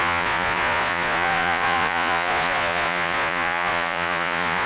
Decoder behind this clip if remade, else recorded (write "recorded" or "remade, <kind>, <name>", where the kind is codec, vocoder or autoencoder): remade, vocoder, Vocos